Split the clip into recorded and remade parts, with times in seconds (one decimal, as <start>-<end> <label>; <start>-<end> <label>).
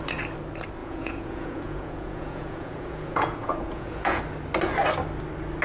0.0-0.8 recorded; 0.8-4.2 remade; 4.2-5.6 recorded